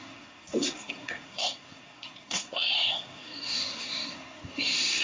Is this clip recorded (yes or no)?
no